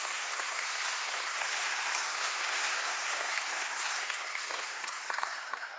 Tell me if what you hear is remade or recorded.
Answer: remade